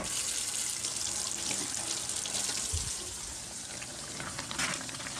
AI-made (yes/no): no